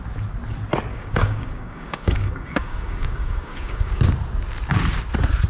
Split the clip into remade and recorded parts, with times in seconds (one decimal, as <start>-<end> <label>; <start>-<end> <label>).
0.0-0.9 recorded; 0.9-4.0 remade; 4.0-5.5 recorded